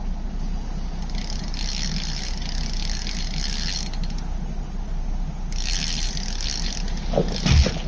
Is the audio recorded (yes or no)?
yes